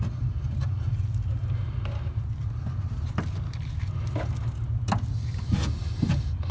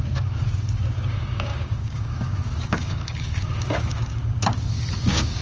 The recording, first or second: first